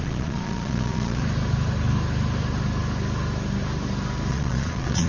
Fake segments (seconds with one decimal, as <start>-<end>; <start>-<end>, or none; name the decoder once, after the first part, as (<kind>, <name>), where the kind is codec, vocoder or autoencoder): 0.0-1.2 (vocoder, Vocos); 4.3-5.1